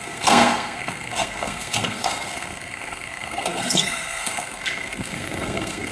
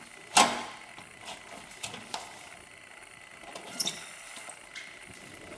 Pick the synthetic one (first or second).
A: first